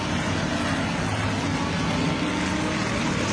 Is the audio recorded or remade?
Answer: recorded